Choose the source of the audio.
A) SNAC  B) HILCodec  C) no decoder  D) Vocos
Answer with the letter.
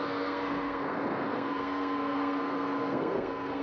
A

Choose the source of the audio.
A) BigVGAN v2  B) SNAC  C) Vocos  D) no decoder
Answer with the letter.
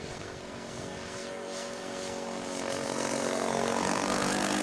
B